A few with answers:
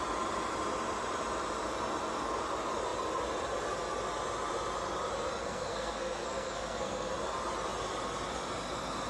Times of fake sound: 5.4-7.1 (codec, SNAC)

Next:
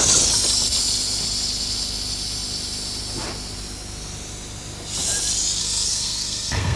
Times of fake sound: 5.6-6.8 (codec, SNAC)

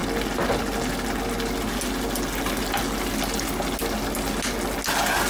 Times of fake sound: none

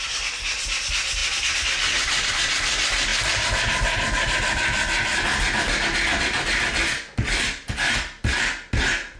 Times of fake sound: none

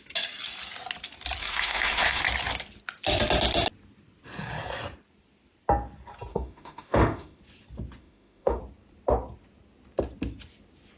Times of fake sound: 1.4-2.2 (autoencoder, DAC-VAE); 6.3-7.4; 8.0-8.6